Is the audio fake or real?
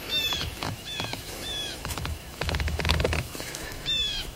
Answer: fake